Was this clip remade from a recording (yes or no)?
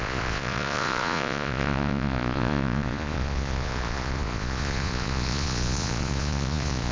yes